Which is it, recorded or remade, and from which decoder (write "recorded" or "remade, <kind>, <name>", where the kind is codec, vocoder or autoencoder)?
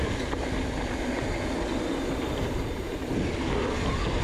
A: recorded